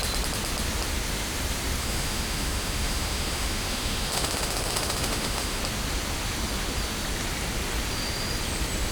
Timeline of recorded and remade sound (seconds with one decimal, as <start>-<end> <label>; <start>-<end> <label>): 0.0-1.8 recorded; 1.8-5.6 remade; 5.6-8.9 recorded